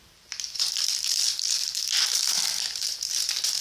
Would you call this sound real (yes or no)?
no